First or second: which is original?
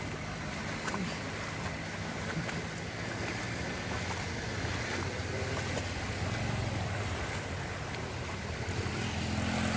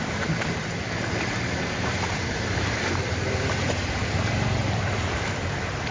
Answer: first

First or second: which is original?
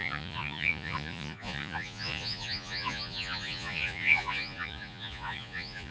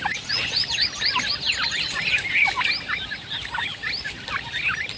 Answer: second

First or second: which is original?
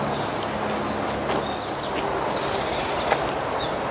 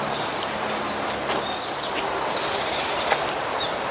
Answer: first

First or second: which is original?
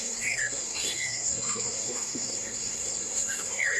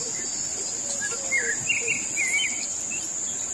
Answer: second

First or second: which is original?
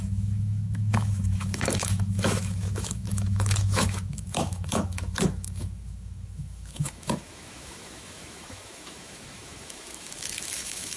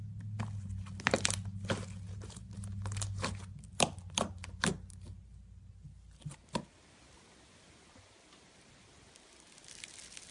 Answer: second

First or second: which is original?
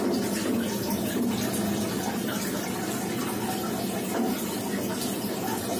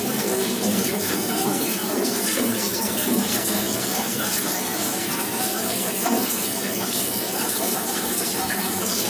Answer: first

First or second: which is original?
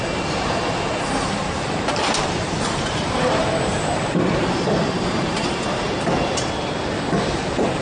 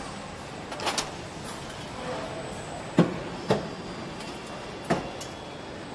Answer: second